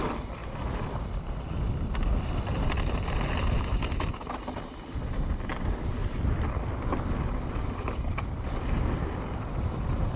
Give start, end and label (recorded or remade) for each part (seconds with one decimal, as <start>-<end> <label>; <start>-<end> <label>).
0.0-6.0 remade; 6.0-7.5 recorded; 7.5-10.2 remade